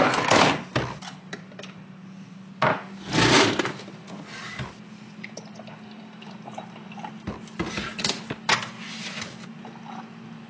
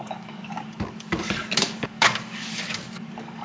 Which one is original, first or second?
first